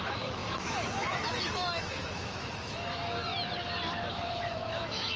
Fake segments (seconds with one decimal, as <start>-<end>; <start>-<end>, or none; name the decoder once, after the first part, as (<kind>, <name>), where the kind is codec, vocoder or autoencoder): 0.0-3.3 (autoencoder, DAC-VAE); 4.1-5.2